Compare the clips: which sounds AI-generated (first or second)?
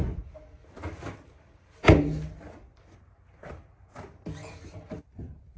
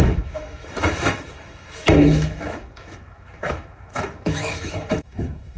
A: second